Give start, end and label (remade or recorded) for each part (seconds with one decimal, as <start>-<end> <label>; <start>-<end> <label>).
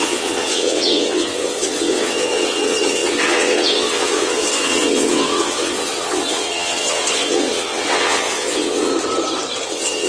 0.0-8.9 remade; 8.9-9.7 recorded; 9.7-10.1 remade